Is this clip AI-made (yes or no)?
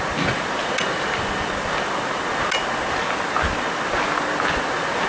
no